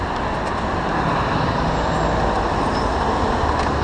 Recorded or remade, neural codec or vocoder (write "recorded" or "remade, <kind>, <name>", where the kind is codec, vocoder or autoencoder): recorded